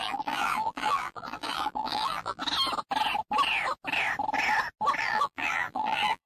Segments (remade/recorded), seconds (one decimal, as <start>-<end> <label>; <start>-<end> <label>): 0.0-2.4 remade; 2.4-5.0 recorded; 5.0-6.3 remade